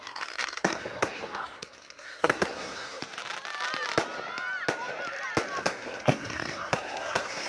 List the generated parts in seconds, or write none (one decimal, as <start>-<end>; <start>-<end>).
0.0-3.0; 5.6-7.5